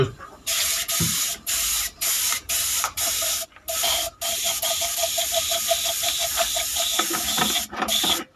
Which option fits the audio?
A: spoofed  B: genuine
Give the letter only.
B